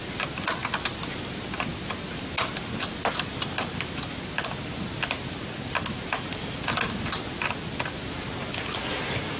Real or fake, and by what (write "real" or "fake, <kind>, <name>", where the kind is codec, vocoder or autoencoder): real